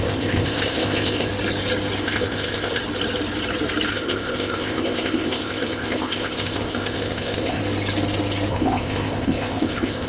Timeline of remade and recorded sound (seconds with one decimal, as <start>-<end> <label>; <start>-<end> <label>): 0.0-1.3 remade; 1.3-2.0 recorded; 2.0-2.8 remade; 2.8-3.9 recorded; 3.9-7.6 remade; 7.6-8.5 recorded; 8.5-10.1 remade